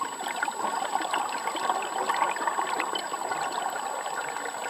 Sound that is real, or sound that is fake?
real